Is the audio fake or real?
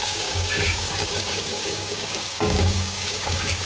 fake